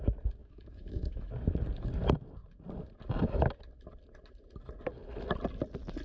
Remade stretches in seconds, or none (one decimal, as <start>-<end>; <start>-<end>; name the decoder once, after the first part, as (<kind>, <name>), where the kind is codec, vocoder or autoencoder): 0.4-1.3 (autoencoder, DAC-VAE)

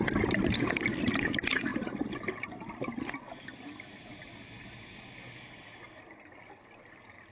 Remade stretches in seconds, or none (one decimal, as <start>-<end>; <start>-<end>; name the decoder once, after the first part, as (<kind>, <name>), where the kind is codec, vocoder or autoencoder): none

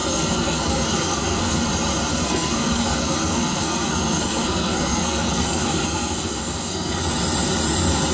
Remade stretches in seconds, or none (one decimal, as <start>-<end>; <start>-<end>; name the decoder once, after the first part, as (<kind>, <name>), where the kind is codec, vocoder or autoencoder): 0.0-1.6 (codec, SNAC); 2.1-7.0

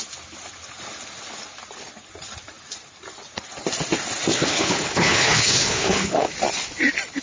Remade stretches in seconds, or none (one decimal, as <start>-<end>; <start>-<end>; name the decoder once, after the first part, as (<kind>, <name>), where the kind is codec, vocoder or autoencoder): 4.3-6.3 (codec, HILCodec)